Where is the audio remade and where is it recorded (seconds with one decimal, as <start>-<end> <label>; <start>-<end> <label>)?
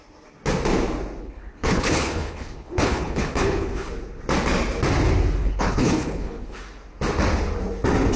0.0-1.2 recorded; 1.2-3.9 remade; 3.9-5.4 recorded; 5.4-6.6 remade; 6.6-8.2 recorded